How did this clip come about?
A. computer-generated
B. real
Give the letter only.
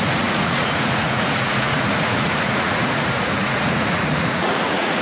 A